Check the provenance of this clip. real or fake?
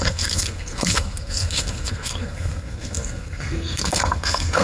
fake